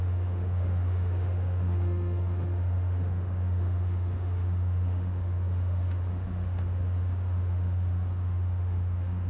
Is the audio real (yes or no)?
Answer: no